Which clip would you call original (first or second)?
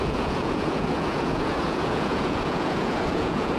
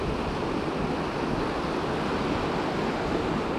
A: second